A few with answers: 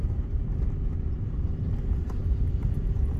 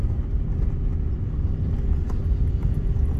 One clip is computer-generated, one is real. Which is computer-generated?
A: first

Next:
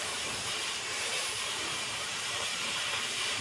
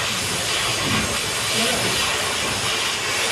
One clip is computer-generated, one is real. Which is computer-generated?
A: first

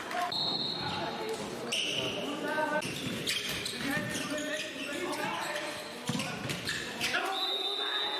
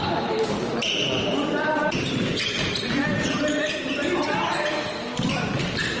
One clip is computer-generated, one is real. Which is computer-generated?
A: second